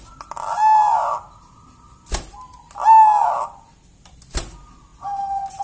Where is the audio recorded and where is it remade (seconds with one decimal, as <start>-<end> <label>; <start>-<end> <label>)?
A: 0.0-5.6 recorded